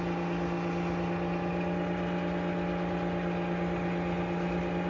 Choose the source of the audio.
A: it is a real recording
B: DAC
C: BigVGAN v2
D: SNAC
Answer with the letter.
A